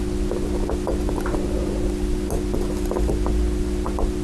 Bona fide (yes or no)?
yes